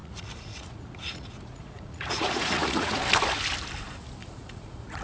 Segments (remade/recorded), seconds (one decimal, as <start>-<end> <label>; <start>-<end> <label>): 0.0-3.0 remade; 3.0-4.2 recorded; 4.2-5.0 remade